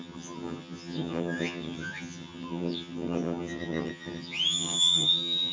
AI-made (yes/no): yes